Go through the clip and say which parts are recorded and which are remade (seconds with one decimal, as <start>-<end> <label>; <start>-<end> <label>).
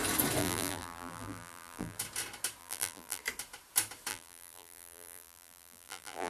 0.0-0.4 recorded; 0.4-2.0 remade; 2.0-2.6 recorded; 2.6-3.2 remade; 3.2-4.1 recorded; 4.1-6.3 remade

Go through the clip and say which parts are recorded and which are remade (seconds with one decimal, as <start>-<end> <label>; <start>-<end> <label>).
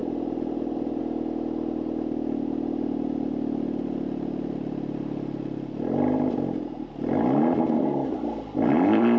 0.0-1.0 remade; 1.0-9.2 recorded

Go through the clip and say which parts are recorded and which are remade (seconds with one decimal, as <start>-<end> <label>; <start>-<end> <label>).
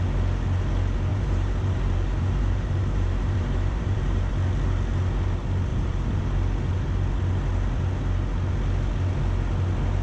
0.0-1.1 recorded; 1.1-4.3 remade; 4.3-5.7 recorded; 5.7-6.2 remade; 6.2-10.0 recorded